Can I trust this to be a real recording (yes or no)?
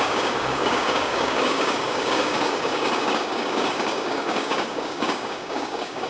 no